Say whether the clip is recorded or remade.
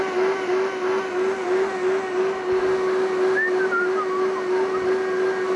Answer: recorded